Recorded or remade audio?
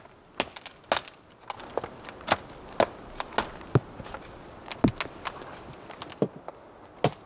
recorded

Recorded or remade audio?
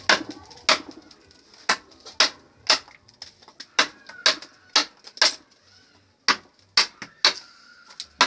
recorded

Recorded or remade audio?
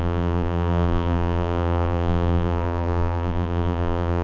remade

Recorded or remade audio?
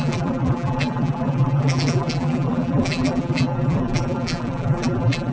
remade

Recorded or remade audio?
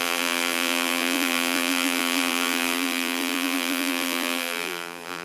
remade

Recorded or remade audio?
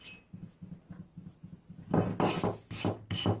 recorded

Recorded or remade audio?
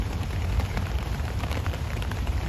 remade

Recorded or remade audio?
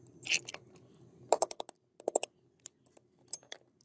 recorded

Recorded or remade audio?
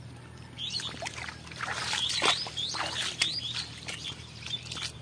recorded